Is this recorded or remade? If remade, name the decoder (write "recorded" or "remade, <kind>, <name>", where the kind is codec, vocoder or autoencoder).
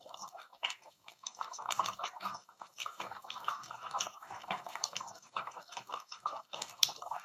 remade, codec, DAC